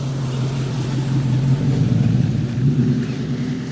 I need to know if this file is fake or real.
fake